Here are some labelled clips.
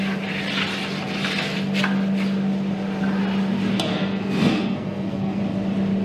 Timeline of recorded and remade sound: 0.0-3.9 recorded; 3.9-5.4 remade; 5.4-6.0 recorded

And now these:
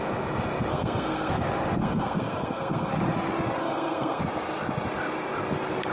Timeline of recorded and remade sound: 0.0-0.7 recorded; 0.7-1.3 remade; 1.3-1.8 recorded; 1.8-2.9 remade; 2.9-3.6 recorded; 3.6-4.2 remade; 4.2-5.9 recorded

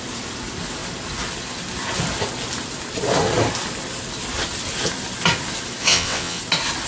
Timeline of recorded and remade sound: 0.0-5.8 recorded; 5.8-6.4 remade; 6.4-6.9 recorded